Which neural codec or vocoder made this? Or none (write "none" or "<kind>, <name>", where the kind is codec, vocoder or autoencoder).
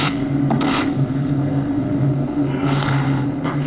codec, SNAC